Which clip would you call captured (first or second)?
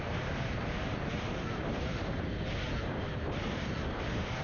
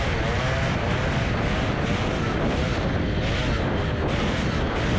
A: second